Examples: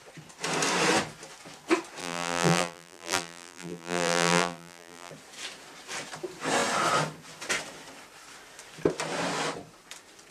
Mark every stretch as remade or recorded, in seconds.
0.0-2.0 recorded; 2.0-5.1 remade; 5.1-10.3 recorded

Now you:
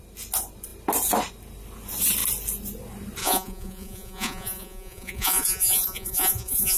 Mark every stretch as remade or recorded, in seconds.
0.0-3.2 recorded; 3.2-6.8 remade

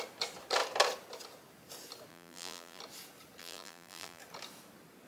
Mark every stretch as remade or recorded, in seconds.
0.0-2.1 recorded; 2.1-2.8 remade; 2.8-3.4 recorded; 3.4-4.2 remade; 4.2-5.1 recorded

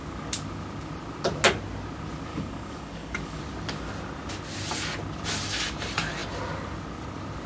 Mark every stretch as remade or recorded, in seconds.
0.0-2.3 recorded; 2.3-3.4 remade; 3.4-7.5 recorded

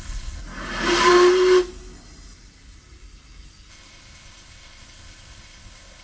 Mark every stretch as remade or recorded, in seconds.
0.0-0.4 remade; 0.4-3.7 recorded; 3.7-6.0 remade

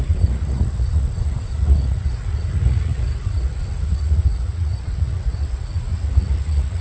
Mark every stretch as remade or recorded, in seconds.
0.0-6.8 remade

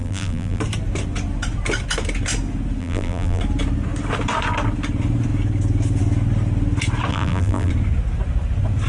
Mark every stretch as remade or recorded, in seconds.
0.0-0.6 remade; 0.6-2.8 recorded; 2.8-3.4 remade; 3.4-7.1 recorded; 7.1-7.7 remade; 7.7-8.9 recorded